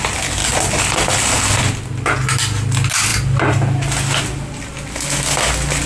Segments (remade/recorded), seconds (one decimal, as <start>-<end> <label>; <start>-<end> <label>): 0.0-5.9 recorded